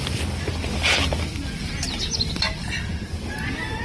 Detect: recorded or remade recorded